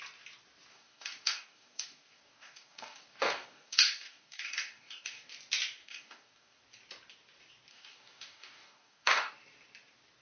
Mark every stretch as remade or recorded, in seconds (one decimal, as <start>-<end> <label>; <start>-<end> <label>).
0.0-0.7 recorded; 0.7-5.3 remade; 5.3-5.8 recorded; 5.8-6.6 remade; 6.6-7.7 recorded; 7.7-9.3 remade; 9.3-10.2 recorded